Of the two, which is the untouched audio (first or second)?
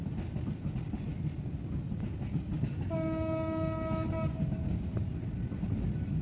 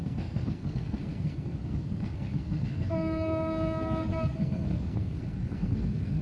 first